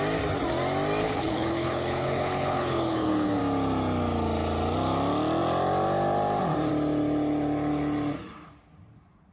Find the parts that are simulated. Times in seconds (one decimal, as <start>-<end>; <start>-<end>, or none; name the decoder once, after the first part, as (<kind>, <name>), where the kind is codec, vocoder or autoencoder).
1.0-3.4 (codec, HILCodec)